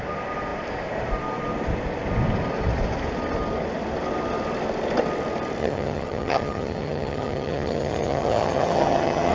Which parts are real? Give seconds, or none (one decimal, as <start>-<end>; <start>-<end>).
0.0-5.6